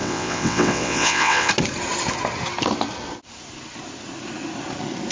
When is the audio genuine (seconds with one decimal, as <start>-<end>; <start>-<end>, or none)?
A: 1.5-5.1